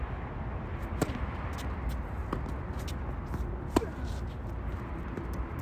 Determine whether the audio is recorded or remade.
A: recorded